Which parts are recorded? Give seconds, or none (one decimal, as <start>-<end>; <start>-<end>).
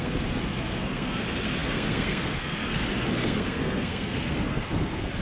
none